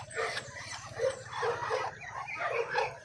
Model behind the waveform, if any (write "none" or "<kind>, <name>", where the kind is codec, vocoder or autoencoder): vocoder, BigVGAN v2